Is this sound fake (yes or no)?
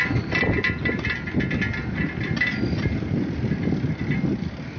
no